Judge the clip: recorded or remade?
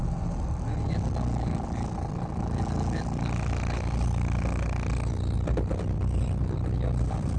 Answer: recorded